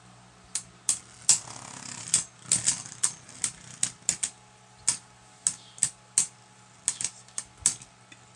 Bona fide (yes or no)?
yes